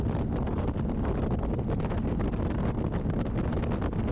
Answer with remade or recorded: recorded